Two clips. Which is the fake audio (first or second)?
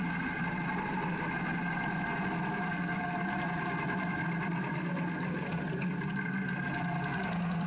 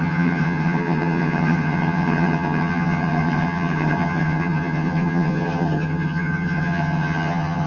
second